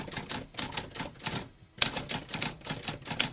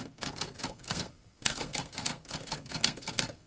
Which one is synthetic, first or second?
second